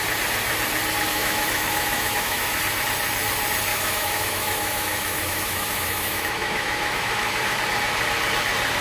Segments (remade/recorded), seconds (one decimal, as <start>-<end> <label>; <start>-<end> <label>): 0.0-1.1 recorded; 1.1-2.6 remade; 2.6-3.7 recorded; 3.7-7.6 remade; 7.6-8.8 recorded